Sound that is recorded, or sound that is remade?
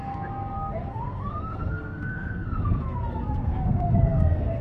remade